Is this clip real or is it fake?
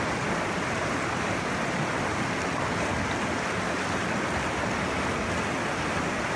real